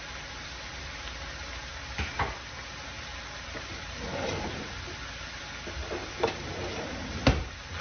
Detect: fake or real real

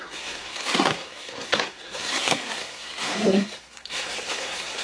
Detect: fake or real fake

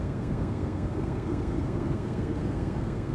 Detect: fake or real fake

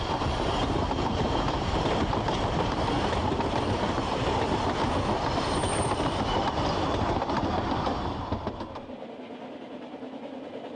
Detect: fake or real real